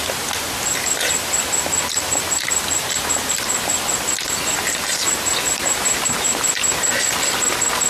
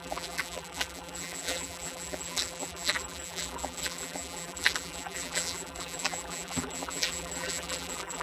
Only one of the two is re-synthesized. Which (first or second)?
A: second